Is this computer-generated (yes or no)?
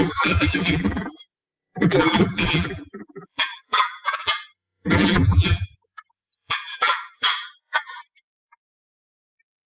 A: yes